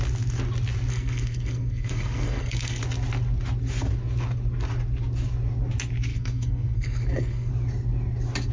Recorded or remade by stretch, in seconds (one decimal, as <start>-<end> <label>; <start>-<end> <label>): 0.0-0.9 recorded; 0.9-2.8 remade; 2.8-6.1 recorded; 6.1-7.5 remade; 7.5-8.5 recorded